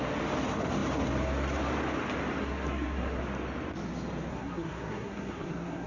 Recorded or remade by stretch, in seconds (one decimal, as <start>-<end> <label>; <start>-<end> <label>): 0.0-2.4 recorded; 2.4-3.2 remade; 3.2-4.3 recorded; 4.3-5.9 remade